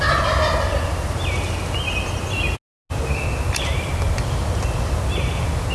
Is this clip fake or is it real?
real